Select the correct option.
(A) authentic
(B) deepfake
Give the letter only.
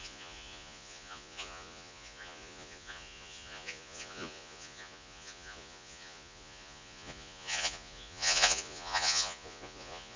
B